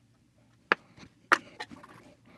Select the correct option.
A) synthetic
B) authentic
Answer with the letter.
B